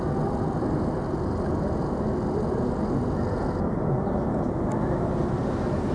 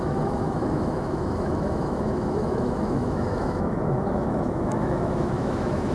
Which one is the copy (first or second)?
second